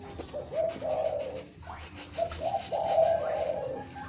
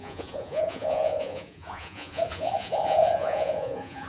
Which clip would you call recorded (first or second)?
first